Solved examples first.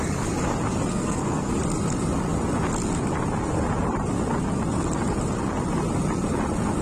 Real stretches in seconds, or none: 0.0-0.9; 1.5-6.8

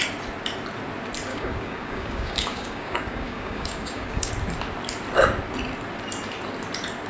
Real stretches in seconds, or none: 0.0-1.3; 4.3-7.1

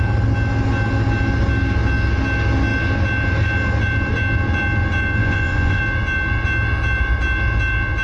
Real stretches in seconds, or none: 0.0-5.2; 5.8-8.0

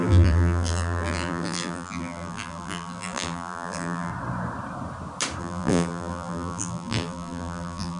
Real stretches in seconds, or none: 4.1-5.4

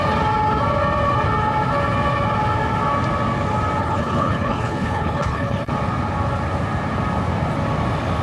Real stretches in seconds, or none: 0.0-3.8; 5.7-8.2